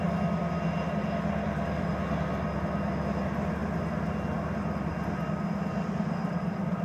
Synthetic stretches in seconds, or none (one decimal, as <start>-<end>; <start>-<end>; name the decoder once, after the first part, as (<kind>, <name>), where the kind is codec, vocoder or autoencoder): 6.2-6.8 (vocoder, BigVGAN v2)